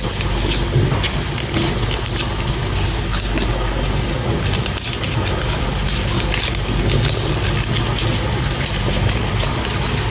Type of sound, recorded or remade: recorded